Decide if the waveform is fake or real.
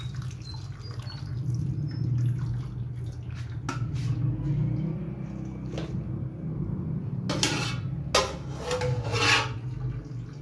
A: real